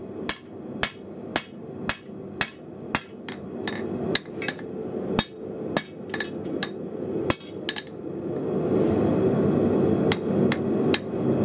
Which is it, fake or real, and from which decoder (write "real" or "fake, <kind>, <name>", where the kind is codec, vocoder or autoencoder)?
real